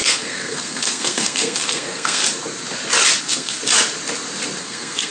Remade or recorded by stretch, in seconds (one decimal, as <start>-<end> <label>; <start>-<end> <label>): 0.0-2.2 remade; 2.2-3.2 recorded; 3.2-3.6 remade; 3.6-4.6 recorded; 4.6-5.1 remade